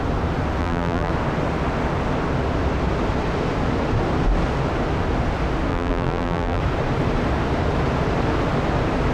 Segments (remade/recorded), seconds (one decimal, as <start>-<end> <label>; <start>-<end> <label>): 0.0-0.6 recorded; 0.6-1.1 remade; 1.1-5.7 recorded; 5.7-6.6 remade; 6.6-9.1 recorded